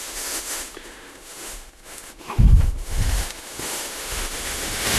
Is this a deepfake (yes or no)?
yes